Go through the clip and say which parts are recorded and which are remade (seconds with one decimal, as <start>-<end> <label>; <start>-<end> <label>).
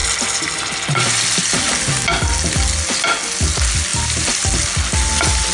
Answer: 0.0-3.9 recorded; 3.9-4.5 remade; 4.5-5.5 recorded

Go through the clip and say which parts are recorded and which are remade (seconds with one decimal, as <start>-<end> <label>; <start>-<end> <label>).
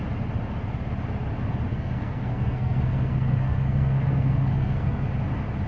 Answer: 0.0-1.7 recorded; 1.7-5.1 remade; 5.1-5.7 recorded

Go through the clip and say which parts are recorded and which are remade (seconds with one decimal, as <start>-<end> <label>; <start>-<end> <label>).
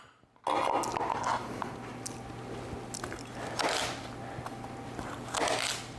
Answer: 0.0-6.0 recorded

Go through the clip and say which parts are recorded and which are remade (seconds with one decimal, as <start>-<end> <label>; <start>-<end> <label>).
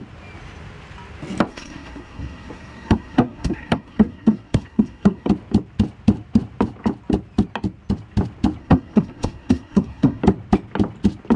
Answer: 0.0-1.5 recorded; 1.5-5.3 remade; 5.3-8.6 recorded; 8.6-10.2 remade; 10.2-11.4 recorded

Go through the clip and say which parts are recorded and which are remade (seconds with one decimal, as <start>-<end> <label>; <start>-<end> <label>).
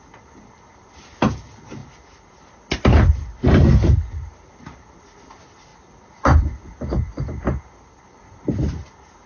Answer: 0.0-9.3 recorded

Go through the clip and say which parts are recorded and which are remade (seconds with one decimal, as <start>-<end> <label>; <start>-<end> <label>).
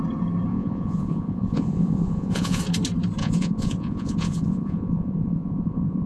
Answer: 0.0-0.5 recorded; 0.5-2.6 remade; 2.6-3.2 recorded; 3.2-6.1 remade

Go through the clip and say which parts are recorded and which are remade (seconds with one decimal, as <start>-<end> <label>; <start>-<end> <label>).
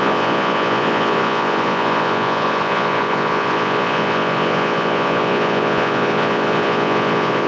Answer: 0.0-7.5 remade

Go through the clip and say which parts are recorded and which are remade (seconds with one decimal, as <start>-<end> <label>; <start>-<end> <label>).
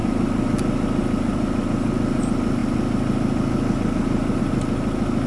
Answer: 0.0-5.3 recorded